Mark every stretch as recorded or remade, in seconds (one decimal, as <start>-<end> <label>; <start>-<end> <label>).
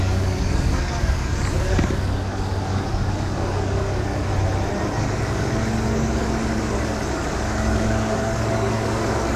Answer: 0.0-4.3 remade; 4.3-5.0 recorded; 5.0-9.4 remade